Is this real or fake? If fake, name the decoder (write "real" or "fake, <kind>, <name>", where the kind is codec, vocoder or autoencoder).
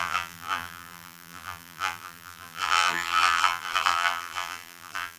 fake, vocoder, BigVGAN v2